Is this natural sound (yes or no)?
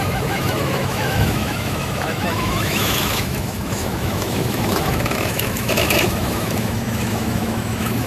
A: no